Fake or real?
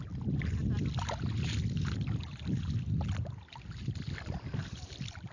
real